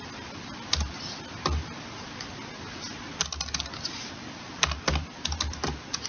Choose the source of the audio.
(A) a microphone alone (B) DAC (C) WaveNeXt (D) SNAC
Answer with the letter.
A